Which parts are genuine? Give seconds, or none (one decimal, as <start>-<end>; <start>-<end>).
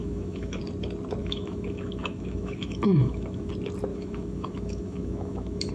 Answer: 0.6-1.2; 3.5-3.9